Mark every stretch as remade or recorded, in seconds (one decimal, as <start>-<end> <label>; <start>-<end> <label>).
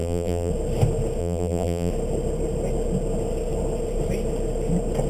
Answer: 0.0-0.5 remade; 0.5-1.2 recorded; 1.2-1.9 remade; 1.9-5.1 recorded